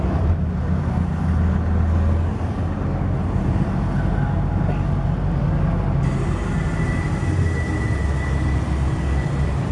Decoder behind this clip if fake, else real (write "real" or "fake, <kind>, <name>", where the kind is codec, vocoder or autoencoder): real